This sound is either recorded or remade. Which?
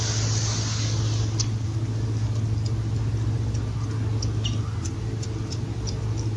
recorded